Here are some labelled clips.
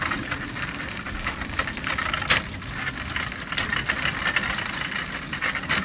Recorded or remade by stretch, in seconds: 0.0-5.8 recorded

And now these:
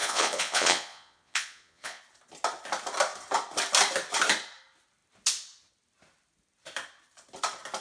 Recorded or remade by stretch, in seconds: 0.0-2.0 remade; 2.0-7.8 recorded

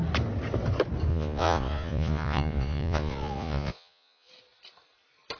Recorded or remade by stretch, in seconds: 0.0-1.1 recorded; 1.1-4.3 remade; 4.3-5.4 recorded

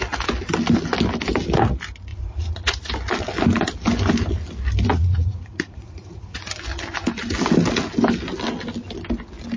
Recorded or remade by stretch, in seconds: 0.0-2.1 recorded; 2.1-2.9 remade; 2.9-4.9 recorded; 4.9-6.5 remade; 6.5-9.6 recorded

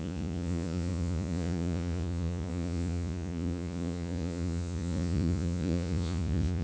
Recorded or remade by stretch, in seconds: 0.0-6.6 remade